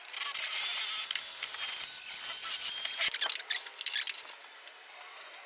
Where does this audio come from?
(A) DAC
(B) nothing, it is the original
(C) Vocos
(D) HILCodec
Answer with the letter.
B